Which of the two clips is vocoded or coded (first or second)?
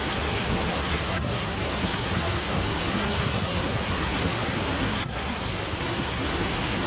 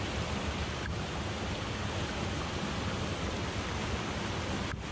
first